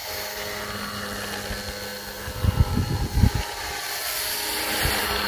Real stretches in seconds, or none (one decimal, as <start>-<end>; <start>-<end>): 0.0-5.3